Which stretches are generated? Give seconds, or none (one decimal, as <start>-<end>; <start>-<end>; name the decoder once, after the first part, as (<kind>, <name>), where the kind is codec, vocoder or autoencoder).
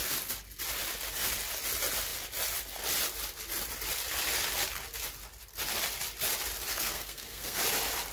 6.7-7.6 (codec, SNAC)